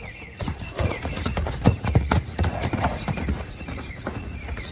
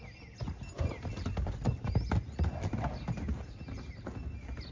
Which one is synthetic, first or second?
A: first